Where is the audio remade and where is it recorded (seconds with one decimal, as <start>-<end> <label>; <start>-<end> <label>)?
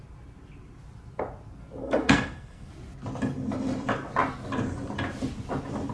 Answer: 0.0-1.8 recorded; 1.8-2.7 remade; 2.7-5.9 recorded